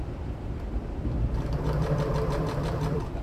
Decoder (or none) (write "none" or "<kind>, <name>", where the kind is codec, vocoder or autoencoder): vocoder, BigVGAN v2